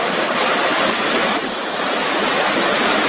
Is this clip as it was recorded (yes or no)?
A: yes